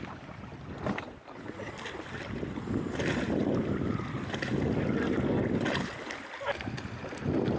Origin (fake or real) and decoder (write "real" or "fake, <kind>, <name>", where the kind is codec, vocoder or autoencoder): real